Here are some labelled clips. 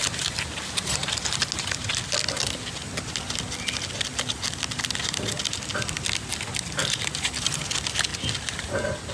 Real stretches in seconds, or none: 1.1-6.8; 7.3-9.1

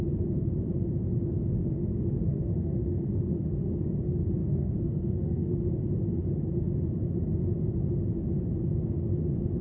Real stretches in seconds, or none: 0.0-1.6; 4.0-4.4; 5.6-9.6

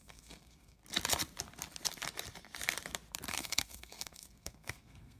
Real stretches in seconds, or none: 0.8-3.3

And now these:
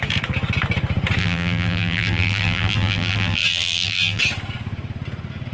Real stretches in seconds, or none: 0.0-1.2; 4.2-5.5

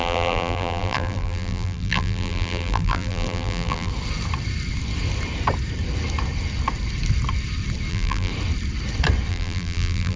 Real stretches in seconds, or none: 3.9-7.9; 8.3-9.3

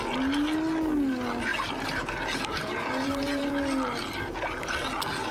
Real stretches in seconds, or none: 0.0-1.5; 3.5-5.3

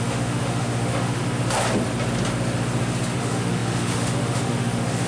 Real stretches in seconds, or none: 1.2-3.2

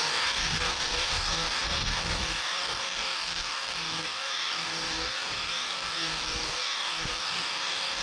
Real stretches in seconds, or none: none